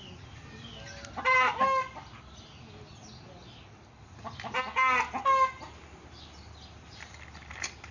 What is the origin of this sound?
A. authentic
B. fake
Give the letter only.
A